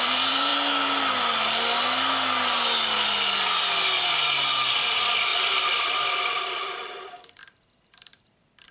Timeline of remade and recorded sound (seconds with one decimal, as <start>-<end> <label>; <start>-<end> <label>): 0.0-0.5 remade; 0.5-4.7 recorded; 4.7-8.7 remade